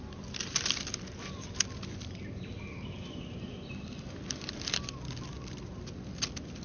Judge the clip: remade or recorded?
recorded